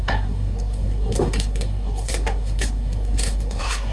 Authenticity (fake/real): fake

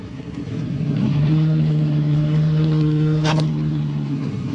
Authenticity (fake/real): fake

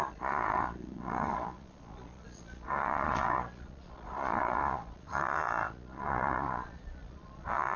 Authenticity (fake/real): fake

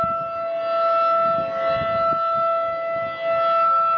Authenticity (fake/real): real